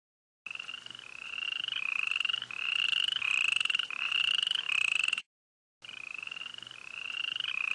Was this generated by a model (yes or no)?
no